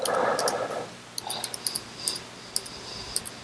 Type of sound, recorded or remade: recorded